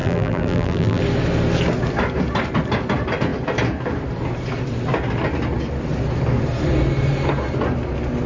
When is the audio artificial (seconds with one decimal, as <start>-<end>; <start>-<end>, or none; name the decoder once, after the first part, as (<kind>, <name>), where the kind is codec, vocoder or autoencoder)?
0.0-1.0 (vocoder, BigVGAN v2)